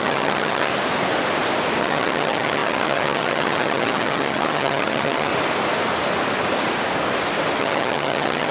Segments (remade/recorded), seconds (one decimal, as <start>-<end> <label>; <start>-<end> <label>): 0.0-0.7 remade; 0.7-1.8 recorded; 1.8-5.3 remade; 5.3-7.6 recorded; 7.6-8.5 remade